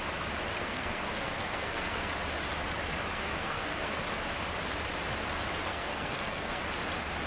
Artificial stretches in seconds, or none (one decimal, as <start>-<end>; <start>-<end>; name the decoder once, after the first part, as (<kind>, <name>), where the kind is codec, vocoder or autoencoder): 0.6-2.1 (codec, SNAC); 3.1-4.0; 5.7-6.6